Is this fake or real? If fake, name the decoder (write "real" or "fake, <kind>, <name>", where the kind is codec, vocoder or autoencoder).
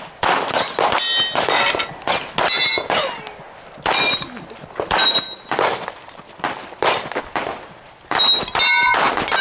real